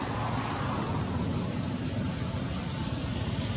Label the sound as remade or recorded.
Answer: recorded